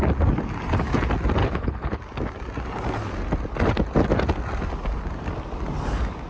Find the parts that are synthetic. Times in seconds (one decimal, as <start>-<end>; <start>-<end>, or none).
1.4-2.0

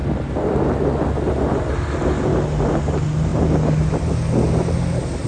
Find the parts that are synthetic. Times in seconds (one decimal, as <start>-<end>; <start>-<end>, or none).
none

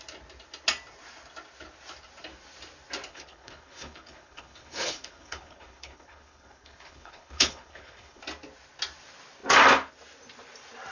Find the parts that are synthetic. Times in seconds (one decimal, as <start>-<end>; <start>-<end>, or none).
3.1-8.2

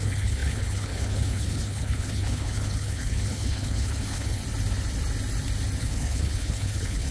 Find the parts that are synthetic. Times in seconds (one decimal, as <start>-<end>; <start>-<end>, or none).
0.0-4.4; 5.8-7.1

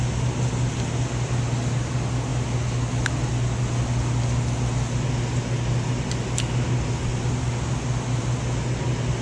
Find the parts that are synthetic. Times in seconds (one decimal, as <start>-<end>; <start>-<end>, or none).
none